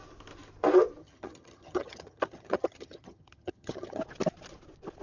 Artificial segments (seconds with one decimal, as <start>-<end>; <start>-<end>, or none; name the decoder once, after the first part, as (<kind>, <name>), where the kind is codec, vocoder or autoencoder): 1.0-4.0 (vocoder, HiFi-GAN)